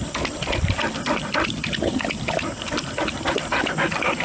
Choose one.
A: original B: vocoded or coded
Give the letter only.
A